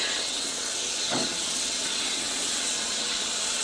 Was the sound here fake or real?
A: fake